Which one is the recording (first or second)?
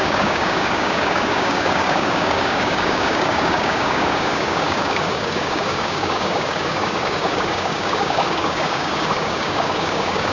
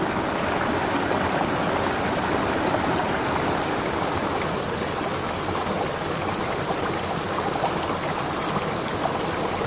second